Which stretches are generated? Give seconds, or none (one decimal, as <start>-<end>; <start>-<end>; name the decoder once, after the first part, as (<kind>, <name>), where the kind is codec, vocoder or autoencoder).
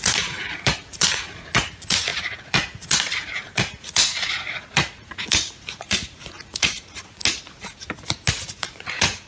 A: 0.0-7.2 (vocoder, Vocos); 8.3-9.3